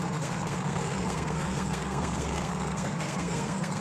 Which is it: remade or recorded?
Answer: remade